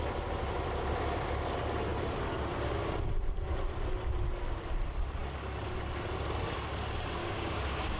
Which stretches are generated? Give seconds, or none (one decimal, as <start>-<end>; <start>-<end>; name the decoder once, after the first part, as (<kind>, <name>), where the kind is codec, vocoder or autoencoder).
7.2-8.0 (codec, DAC)